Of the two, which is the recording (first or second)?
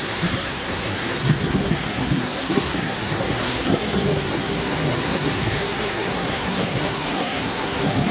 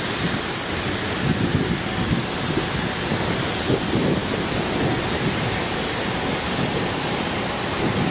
second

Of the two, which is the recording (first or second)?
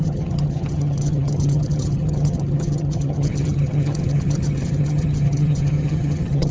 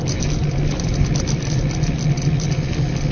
second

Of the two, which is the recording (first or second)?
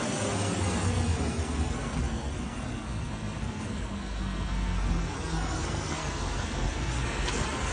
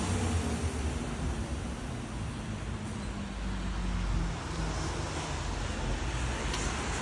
second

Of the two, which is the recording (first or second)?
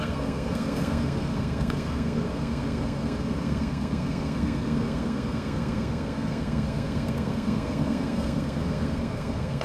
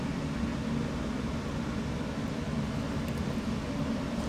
second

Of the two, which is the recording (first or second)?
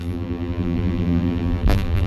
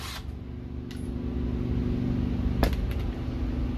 second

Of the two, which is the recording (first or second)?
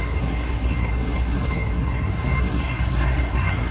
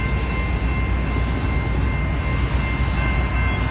second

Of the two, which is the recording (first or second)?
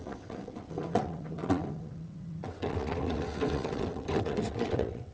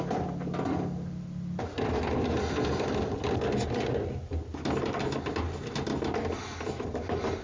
second